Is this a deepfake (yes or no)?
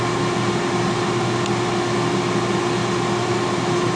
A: no